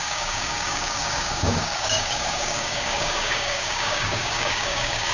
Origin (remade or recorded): remade